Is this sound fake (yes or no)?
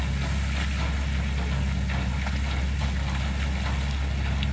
no